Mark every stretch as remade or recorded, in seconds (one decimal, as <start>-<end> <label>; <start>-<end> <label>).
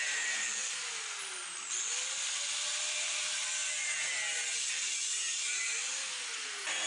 0.0-6.9 recorded